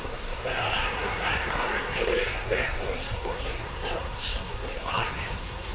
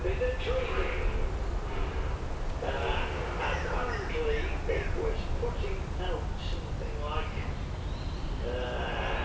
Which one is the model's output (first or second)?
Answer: first